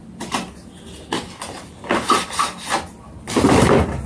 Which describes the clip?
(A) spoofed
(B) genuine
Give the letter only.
B